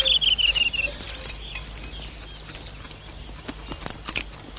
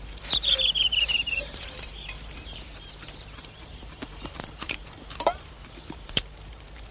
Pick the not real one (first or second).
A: second